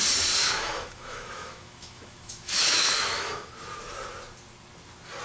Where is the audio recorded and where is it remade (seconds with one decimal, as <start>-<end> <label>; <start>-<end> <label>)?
0.0-0.4 recorded; 0.4-3.5 remade; 3.5-5.2 recorded